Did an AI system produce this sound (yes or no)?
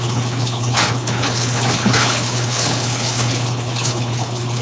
yes